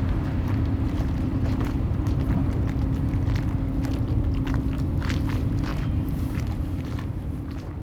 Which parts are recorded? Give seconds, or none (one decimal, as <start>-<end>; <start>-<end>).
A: 2.4-5.0